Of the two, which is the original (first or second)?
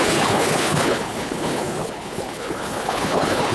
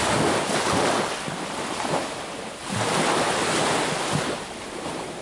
second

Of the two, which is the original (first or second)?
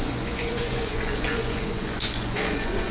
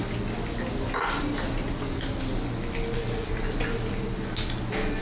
second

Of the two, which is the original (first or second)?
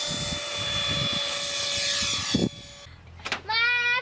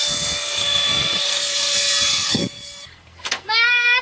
first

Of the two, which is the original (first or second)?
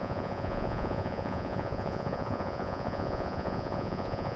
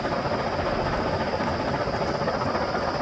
second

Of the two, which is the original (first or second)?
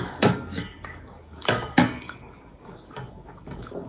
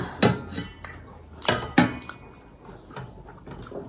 second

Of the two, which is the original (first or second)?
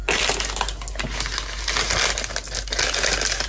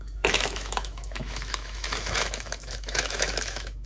first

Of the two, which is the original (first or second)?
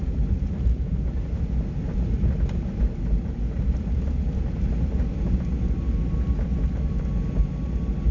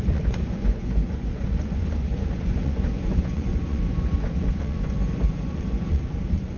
first